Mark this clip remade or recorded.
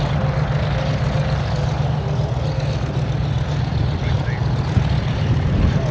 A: recorded